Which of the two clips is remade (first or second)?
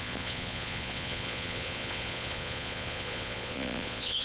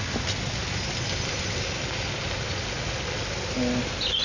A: first